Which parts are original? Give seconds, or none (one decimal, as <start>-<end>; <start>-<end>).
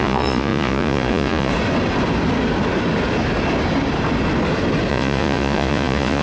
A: 1.5-4.9